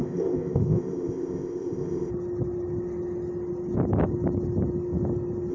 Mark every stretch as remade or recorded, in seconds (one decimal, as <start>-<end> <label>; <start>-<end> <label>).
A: 0.0-2.1 remade; 2.1-5.5 recorded